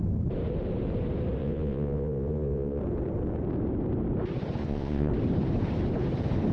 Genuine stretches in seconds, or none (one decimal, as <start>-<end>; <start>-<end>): 0.0-1.4; 2.8-4.6; 5.1-6.5